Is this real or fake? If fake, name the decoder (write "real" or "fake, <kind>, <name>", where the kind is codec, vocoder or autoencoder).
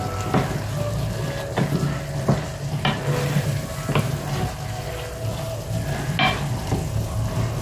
real